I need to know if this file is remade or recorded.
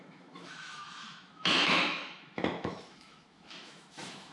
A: remade